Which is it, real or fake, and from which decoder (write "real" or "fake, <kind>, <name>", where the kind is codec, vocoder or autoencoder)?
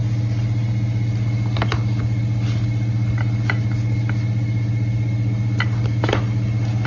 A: real